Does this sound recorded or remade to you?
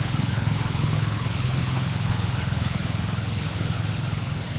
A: remade